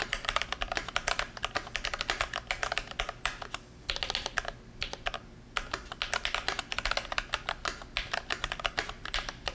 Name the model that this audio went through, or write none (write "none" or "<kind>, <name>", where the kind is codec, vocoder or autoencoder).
none